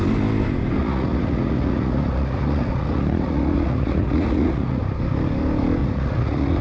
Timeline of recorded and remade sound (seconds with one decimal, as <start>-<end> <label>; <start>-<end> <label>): 0.0-0.8 recorded; 0.8-4.8 remade; 4.8-5.8 recorded; 5.8-6.6 remade